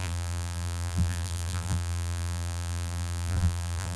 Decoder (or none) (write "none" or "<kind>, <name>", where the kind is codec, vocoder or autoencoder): vocoder, BigVGAN v2